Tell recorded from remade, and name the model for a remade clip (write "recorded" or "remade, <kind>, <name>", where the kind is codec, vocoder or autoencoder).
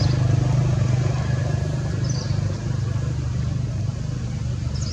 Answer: recorded